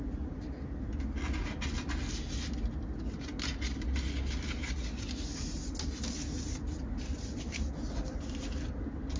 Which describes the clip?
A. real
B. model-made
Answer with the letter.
A